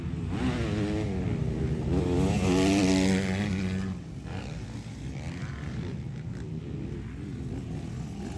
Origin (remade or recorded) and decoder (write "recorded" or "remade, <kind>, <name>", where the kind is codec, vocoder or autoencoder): recorded